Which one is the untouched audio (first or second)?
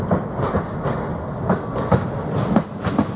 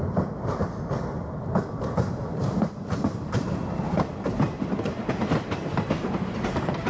first